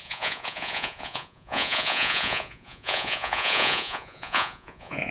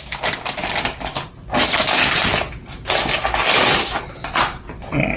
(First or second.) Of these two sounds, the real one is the second